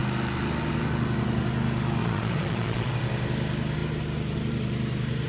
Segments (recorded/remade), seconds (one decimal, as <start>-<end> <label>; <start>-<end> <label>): 0.0-2.0 recorded; 2.0-2.9 remade; 2.9-5.3 recorded